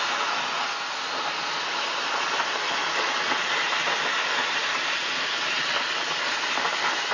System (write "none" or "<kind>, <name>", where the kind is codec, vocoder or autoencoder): none